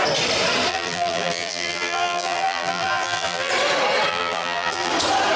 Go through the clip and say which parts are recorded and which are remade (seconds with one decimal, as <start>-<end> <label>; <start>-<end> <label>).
0.0-0.7 recorded; 0.7-3.5 remade; 3.5-4.1 recorded; 4.1-4.9 remade; 4.9-5.4 recorded